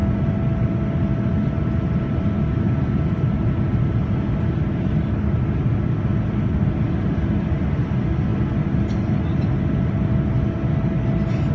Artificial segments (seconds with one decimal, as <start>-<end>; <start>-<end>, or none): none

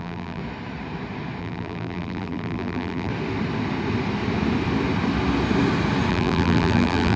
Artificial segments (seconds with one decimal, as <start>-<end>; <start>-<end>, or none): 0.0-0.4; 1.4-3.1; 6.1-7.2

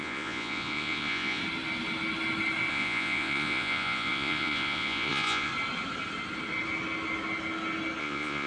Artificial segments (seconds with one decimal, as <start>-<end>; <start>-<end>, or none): 0.0-1.4; 2.7-5.5; 8.0-8.5